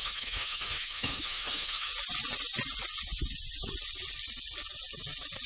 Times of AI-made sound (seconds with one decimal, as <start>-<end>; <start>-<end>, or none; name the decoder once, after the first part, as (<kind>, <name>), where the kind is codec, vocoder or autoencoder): 0.0-1.9 (autoencoder, DAC-VAE)